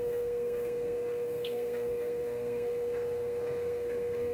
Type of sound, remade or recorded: remade